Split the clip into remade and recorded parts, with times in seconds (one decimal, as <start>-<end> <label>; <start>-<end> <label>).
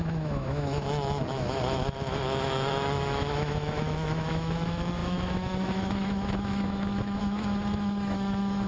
0.0-8.7 remade